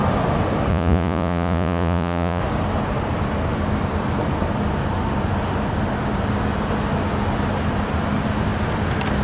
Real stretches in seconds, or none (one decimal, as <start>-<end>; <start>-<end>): 0.0-0.7; 2.4-9.2

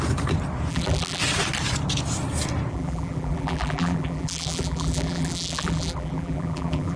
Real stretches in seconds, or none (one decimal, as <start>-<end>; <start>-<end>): 0.0-0.7; 1.2-2.7

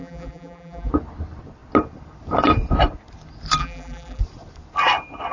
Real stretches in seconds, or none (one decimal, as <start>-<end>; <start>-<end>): 0.9-3.6; 4.2-5.3

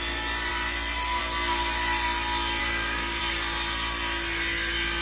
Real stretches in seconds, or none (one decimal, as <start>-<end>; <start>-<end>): 0.0-2.6; 3.2-5.0

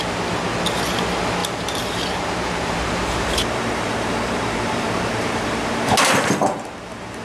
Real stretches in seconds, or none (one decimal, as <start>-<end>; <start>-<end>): 0.0-1.4; 5.7-7.2

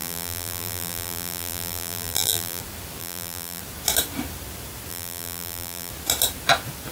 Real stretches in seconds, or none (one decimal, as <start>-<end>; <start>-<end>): 2.6-3.0; 3.6-4.9; 5.9-6.9